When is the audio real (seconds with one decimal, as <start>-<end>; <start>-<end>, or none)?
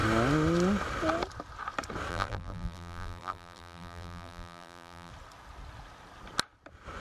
0.0-2.1; 5.1-7.0